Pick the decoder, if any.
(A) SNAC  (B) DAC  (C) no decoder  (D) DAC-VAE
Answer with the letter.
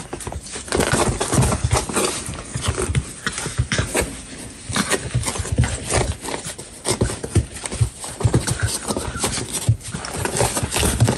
C